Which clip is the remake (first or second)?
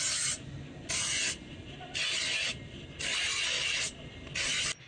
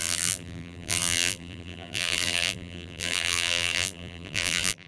second